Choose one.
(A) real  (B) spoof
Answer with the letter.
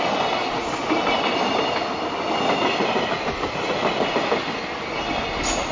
A